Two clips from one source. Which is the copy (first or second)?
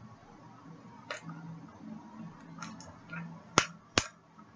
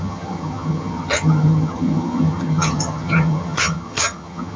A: second